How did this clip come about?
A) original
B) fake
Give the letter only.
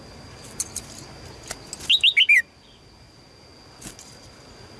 A